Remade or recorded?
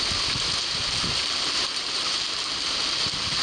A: recorded